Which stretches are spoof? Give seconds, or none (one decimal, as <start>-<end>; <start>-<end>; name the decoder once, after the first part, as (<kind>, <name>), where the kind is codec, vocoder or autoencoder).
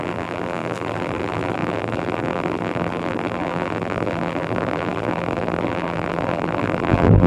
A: 0.0-7.3 (vocoder, BigVGAN v2)